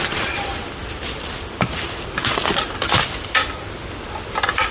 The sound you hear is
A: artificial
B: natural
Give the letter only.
B